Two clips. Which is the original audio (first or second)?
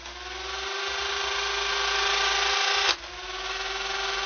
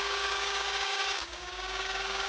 first